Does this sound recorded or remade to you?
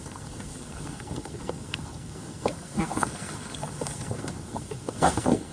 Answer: remade